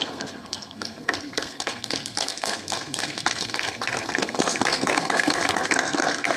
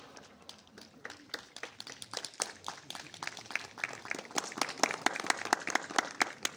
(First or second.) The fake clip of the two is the first